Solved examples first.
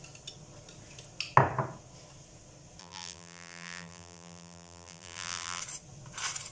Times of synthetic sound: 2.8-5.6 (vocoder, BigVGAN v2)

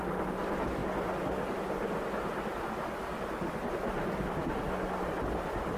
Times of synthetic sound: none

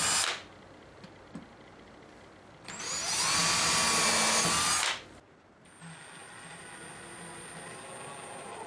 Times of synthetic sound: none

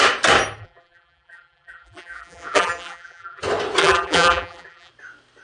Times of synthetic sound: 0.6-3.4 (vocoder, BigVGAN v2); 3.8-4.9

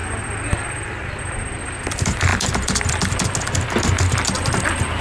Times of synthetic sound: none